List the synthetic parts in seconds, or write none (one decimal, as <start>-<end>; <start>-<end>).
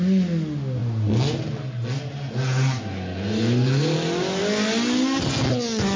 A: none